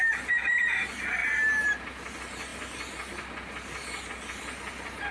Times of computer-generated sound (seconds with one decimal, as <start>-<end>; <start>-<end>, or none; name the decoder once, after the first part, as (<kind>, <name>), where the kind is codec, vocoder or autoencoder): none